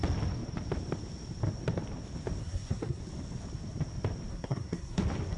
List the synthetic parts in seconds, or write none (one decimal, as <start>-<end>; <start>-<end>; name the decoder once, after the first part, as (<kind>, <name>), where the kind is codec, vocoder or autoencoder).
2.4-3.0 (codec, SNAC); 4.3-5.0

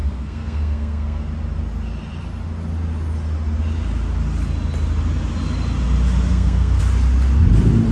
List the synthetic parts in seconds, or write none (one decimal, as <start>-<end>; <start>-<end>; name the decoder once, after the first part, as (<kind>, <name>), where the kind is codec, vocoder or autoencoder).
0.0-1.2 (codec, SNAC); 6.3-6.8

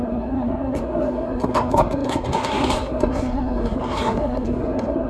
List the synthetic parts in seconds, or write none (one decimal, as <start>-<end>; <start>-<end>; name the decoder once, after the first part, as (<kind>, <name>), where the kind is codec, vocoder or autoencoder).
0.0-5.1 (codec, SNAC)